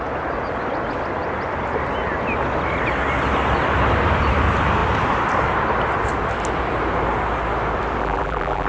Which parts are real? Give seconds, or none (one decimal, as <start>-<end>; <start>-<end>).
0.0-8.0